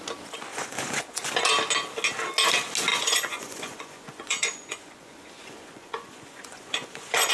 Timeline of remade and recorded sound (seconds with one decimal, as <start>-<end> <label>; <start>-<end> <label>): 0.0-0.5 recorded; 0.5-1.3 remade; 1.3-2.9 recorded; 2.9-7.3 remade

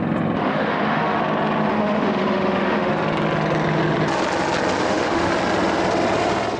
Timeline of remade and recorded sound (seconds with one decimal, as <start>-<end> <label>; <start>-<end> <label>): 0.0-0.4 recorded; 0.4-1.2 remade; 1.2-1.7 recorded; 1.7-2.9 remade; 2.9-4.8 recorded; 4.8-5.3 remade; 5.3-6.6 recorded